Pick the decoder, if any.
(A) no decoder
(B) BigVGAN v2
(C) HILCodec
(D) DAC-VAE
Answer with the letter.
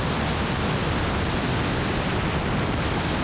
A